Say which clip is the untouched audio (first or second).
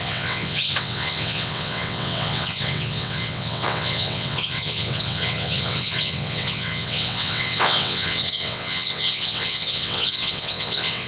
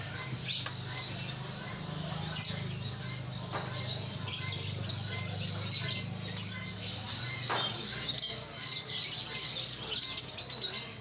second